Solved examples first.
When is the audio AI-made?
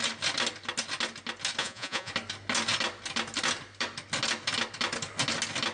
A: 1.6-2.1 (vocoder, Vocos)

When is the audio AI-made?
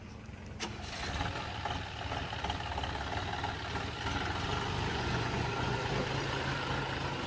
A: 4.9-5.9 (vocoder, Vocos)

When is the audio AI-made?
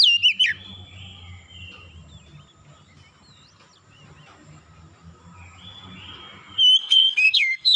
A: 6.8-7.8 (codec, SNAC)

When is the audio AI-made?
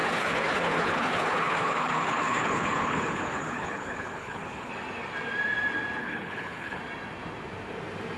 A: 0.0-4.7 (codec, HILCodec); 6.0-6.8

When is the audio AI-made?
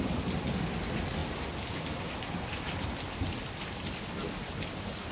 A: none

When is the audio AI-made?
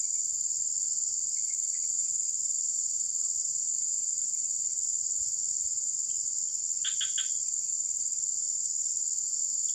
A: 2.0-3.6 (vocoder, BigVGAN v2)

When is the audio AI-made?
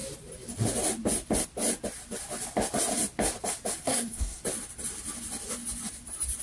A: 3.8-4.4 (codec, SNAC)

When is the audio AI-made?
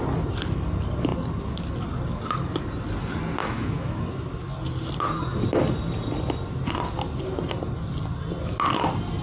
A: 3.4-4.0 (autoencoder, DAC-VAE)